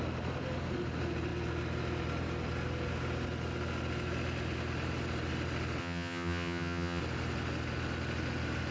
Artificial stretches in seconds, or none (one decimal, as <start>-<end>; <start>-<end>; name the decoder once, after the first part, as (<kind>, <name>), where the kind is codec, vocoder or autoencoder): 5.8-7.0 (vocoder, HiFi-GAN)